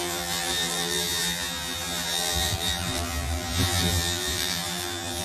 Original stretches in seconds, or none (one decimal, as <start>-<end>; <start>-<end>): none